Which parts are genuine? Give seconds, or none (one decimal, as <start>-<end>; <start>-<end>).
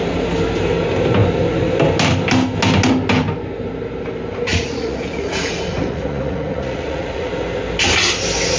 0.0-4.5; 7.3-8.6